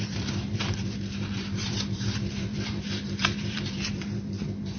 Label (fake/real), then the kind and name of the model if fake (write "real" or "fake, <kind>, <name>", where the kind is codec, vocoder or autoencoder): fake, vocoder, BigVGAN v2